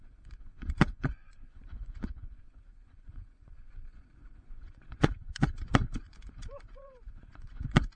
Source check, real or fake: fake